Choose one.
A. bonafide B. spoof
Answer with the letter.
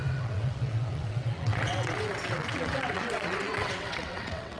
B